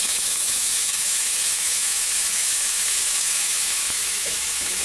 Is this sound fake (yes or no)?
yes